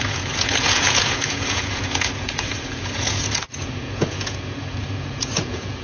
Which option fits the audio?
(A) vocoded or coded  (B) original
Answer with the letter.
A